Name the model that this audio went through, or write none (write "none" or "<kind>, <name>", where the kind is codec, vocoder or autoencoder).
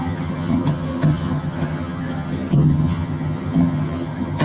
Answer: vocoder, HiFi-GAN